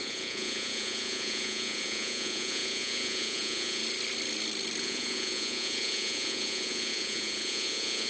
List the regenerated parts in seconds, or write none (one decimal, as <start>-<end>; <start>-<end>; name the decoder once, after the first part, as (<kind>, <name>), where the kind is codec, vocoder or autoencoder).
0.0-3.8 (vocoder, Vocos); 4.8-8.1